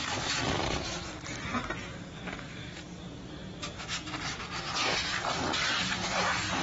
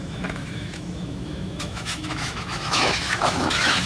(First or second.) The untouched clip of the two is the first